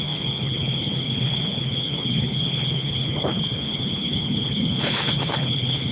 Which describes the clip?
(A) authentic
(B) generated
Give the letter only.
B